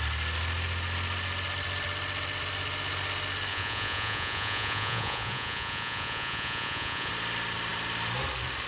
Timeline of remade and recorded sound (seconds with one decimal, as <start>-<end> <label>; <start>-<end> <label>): 0.0-3.5 recorded; 3.5-7.1 remade; 7.1-8.7 recorded